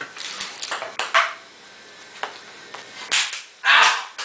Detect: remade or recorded recorded